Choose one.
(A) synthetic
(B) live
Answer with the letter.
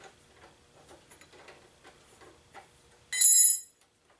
B